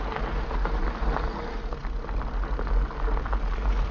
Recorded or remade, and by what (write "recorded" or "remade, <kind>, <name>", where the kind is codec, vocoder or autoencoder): recorded